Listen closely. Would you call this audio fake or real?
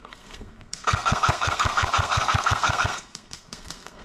fake